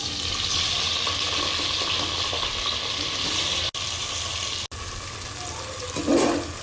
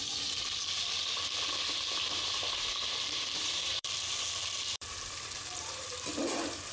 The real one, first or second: first